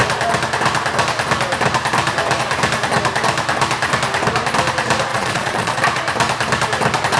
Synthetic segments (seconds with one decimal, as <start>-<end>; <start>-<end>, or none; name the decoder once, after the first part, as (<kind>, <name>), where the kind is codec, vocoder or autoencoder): 5.1-5.8 (vocoder, Vocos)